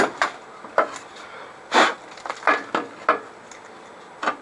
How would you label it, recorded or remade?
recorded